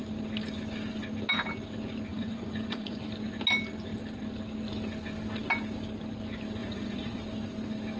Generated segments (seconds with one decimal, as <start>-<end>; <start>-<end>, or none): 2.1-3.0; 6.6-7.2